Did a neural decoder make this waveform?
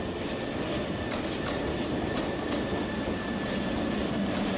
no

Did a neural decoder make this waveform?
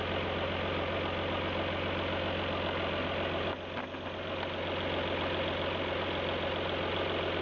no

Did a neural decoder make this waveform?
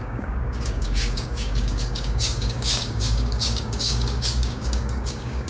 yes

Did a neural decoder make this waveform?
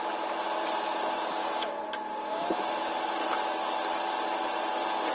no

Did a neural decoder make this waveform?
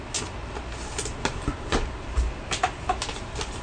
no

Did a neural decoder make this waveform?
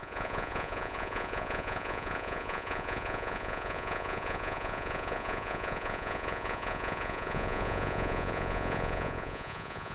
yes